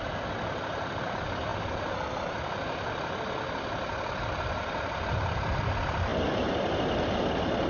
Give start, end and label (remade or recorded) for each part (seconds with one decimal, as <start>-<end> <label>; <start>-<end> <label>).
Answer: 0.0-7.7 recorded